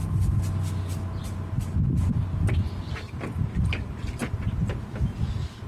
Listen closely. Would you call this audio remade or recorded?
recorded